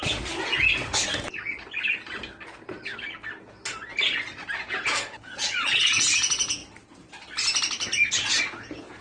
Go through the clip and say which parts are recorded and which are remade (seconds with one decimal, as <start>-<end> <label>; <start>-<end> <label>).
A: 0.0-0.5 remade; 0.5-4.6 recorded; 4.6-6.6 remade; 6.6-8.4 recorded; 8.4-9.0 remade